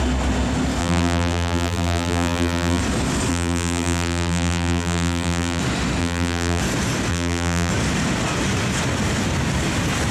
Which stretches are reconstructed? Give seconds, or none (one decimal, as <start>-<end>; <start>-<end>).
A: 0.8-2.8; 3.3-5.6; 6.0-6.6; 7.1-7.7